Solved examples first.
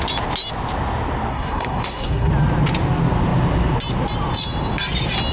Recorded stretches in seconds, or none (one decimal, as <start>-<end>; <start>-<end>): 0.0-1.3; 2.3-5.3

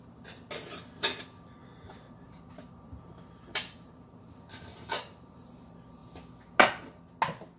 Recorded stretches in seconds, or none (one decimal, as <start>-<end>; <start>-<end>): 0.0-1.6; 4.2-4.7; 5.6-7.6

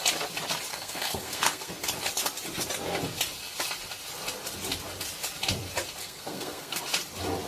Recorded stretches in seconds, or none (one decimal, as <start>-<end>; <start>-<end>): 0.0-0.7; 1.7-6.0; 6.8-7.5

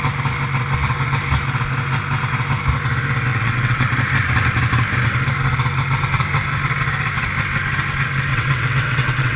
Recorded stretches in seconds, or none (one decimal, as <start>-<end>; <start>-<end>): 0.0-3.3; 3.9-8.3